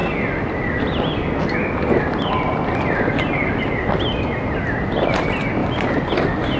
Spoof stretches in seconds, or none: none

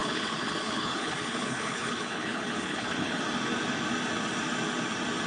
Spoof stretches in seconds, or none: 0.0-3.2 (codec, HILCodec)

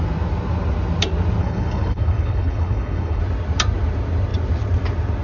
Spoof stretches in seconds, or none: 1.4-3.2 (codec, HILCodec)